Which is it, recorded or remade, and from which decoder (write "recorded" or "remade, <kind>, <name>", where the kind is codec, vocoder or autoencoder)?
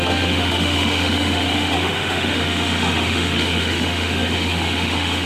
remade, autoencoder, DAC-VAE